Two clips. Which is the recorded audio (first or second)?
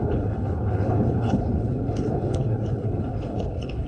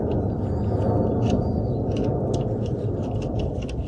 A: second